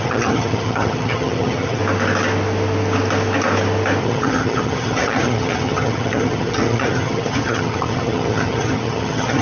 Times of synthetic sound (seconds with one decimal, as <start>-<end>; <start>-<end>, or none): 0.0-1.8; 4.0-9.4

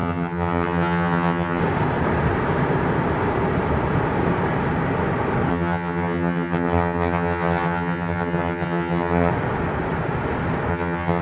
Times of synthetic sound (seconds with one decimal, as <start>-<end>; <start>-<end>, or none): 0.0-1.6; 5.5-9.3; 10.7-11.2

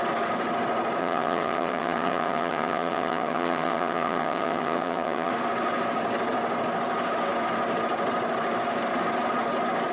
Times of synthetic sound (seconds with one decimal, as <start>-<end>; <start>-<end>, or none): 1.0-5.3

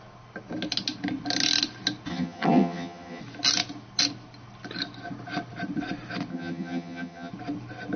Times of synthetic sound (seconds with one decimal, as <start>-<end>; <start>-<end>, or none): 2.1-3.2; 6.3-7.3

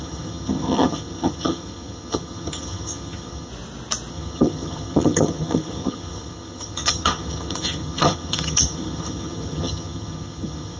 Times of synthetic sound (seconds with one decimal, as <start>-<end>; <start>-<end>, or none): 0.0-3.5; 4.1-10.8